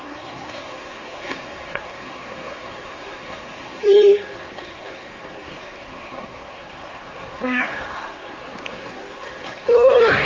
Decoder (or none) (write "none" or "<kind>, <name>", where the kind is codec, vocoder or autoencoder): codec, SNAC